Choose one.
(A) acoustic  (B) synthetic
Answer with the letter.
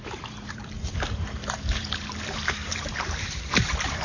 B